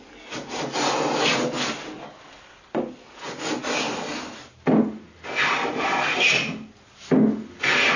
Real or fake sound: real